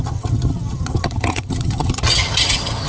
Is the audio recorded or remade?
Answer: remade